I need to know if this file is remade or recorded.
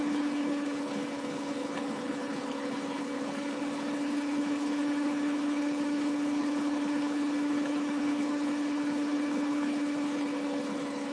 remade